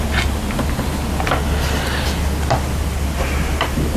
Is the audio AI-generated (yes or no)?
no